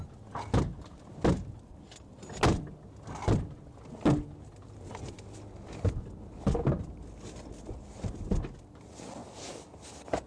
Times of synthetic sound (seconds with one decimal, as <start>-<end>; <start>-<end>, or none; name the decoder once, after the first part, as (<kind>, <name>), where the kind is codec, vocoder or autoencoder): none